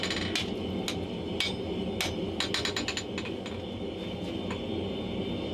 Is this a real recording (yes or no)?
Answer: yes